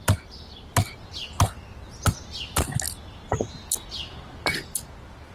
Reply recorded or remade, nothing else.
recorded